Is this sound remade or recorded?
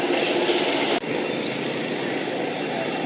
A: recorded